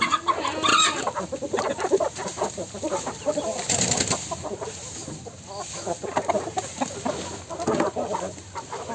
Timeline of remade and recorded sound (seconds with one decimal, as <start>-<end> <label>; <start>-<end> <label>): 0.0-8.9 recorded